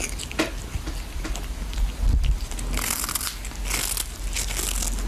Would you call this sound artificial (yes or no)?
no